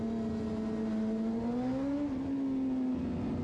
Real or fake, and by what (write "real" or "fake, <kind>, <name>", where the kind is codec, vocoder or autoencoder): real